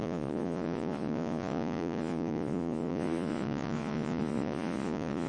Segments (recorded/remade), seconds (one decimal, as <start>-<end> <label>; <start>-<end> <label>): 0.0-5.3 remade